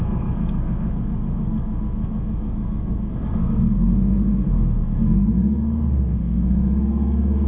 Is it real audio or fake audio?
fake